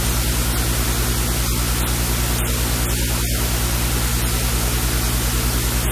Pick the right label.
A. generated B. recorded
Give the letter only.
B